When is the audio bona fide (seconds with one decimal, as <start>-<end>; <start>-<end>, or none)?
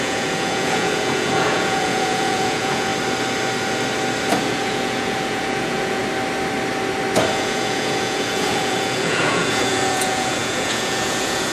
2.9-4.3; 6.0-7.3